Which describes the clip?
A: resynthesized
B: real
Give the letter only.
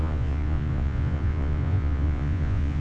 A